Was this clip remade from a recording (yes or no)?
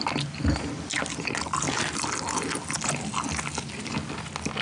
no